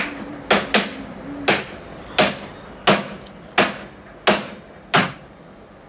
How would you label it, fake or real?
real